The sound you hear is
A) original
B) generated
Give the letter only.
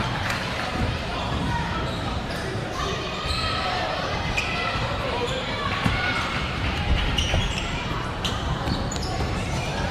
B